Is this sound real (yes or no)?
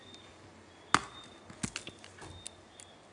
yes